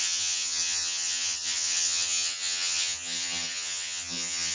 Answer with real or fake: fake